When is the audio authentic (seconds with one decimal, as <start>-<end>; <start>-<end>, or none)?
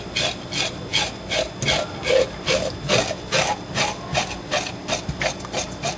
0.0-6.0